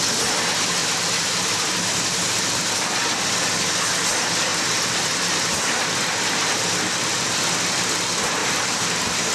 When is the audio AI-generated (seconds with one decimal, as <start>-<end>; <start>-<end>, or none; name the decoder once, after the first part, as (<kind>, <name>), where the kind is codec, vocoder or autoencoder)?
0.8-3.0 (vocoder, BigVGAN v2); 8.4-9.3